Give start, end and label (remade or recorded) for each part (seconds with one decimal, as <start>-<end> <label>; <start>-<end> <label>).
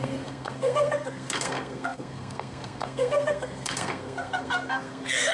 0.0-5.3 remade